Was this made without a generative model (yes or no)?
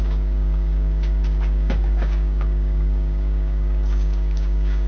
no